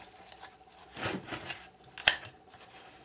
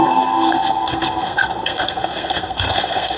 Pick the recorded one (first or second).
first